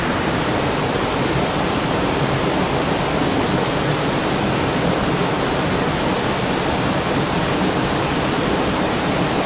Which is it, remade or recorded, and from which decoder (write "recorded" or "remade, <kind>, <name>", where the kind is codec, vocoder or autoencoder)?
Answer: recorded